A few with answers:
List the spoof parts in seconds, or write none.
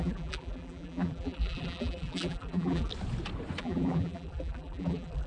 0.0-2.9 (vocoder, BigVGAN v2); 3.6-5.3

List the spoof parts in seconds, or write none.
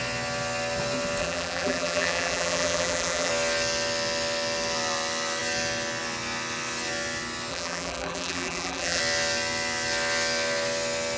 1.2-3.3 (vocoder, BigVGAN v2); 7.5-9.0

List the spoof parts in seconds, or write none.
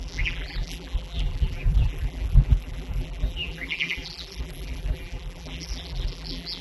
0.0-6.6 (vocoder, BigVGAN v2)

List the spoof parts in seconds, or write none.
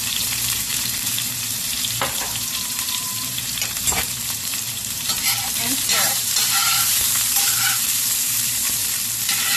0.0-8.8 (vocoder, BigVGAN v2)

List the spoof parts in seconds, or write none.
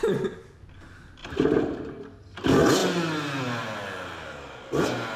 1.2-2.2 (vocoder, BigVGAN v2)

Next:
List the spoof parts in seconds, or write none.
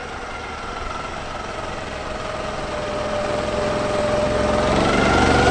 0.0-1.1 (vocoder, BigVGAN v2)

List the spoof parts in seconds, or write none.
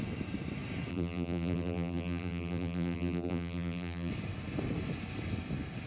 0.9-4.1 (vocoder, BigVGAN v2)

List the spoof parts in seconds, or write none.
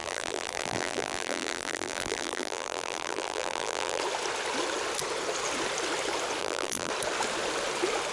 0.0-4.0 (vocoder, BigVGAN v2); 6.4-6.9